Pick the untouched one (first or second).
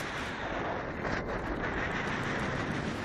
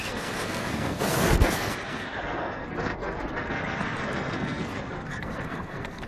first